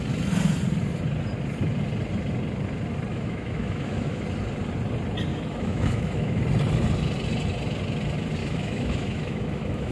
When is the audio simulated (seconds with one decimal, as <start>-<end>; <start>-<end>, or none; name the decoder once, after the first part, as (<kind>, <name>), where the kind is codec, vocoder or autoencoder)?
3.1-4.2 (autoencoder, DAC-VAE); 5.3-6.4; 8.4-9.9